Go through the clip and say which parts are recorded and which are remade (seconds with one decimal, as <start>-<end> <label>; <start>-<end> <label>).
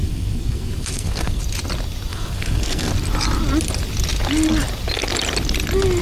0.0-1.4 remade; 1.4-2.1 recorded; 2.1-2.9 remade; 2.9-6.0 recorded